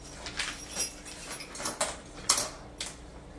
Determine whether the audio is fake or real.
real